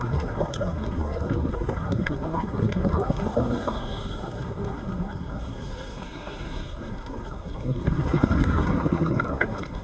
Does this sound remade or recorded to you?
remade